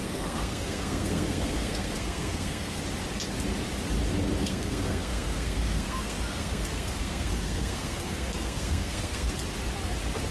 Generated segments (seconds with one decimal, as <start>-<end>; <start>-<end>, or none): 0.0-2.8; 4.4-9.3